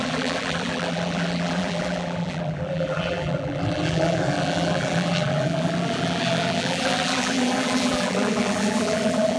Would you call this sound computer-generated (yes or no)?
yes